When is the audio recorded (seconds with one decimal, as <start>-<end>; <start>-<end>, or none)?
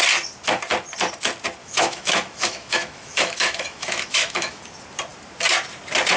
0.0-1.6; 4.6-6.2